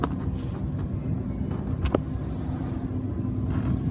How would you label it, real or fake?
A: real